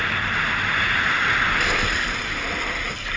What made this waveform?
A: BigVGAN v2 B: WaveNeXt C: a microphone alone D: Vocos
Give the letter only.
C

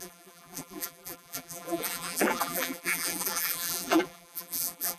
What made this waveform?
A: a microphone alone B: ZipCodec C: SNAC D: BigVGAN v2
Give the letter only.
D